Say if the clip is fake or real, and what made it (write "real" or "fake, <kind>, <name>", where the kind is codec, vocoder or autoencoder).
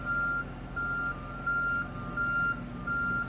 real